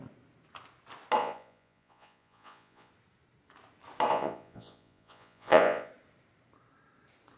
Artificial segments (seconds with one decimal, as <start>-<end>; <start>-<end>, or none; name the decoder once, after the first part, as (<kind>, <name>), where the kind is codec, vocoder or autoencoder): 1.2-2.9 (vocoder, Vocos); 4.1-5.9